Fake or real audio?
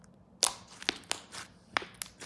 real